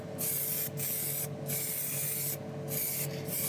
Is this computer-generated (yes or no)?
no